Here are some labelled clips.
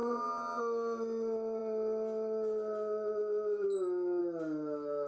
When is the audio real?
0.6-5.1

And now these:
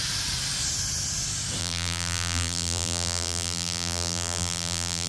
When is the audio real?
0.0-1.6

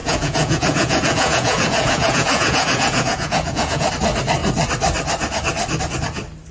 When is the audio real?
3.9-6.5

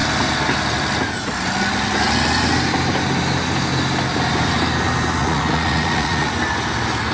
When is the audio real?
0.0-5.2; 6.3-7.1

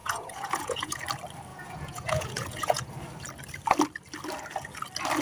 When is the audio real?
1.0-1.5; 2.9-5.2

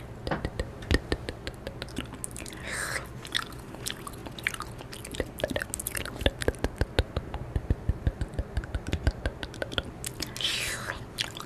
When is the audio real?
0.0-11.5

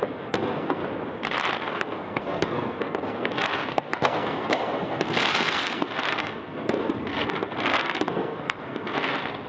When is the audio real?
0.8-1.5